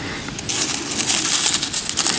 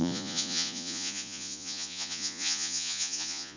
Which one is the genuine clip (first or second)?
first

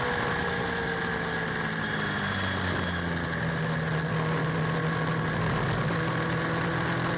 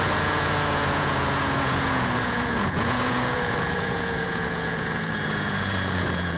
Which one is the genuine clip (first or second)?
first